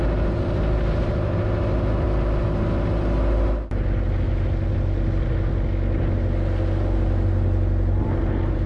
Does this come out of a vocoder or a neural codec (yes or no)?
no